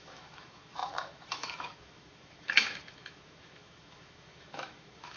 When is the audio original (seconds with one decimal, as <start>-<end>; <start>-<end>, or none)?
none